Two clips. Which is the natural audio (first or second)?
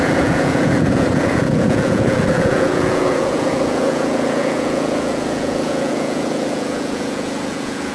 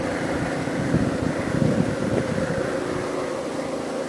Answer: second